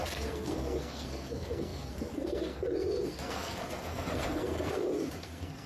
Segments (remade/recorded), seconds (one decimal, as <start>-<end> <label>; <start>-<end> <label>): 0.0-5.7 remade